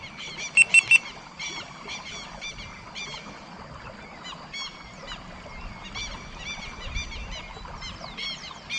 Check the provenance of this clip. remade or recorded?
recorded